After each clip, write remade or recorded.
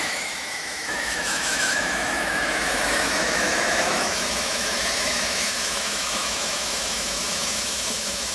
remade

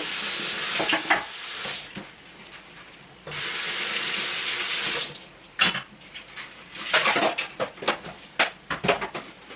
recorded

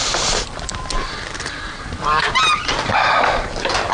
remade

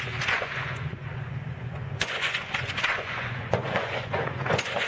remade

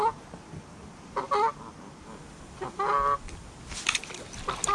recorded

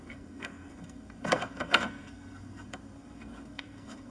remade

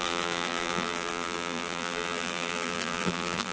remade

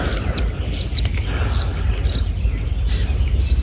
recorded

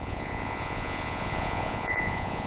remade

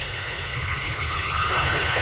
remade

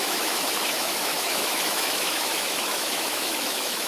remade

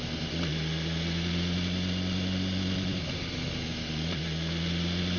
recorded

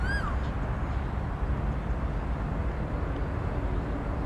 recorded